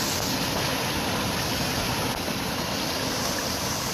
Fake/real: real